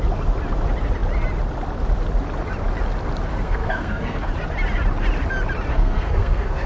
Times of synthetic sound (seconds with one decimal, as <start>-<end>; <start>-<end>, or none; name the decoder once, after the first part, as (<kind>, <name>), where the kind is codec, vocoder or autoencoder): 3.3-4.3 (codec, SNAC); 5.7-6.7